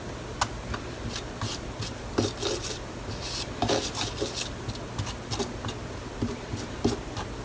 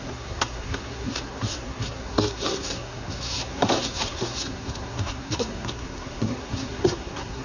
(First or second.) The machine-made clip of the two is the second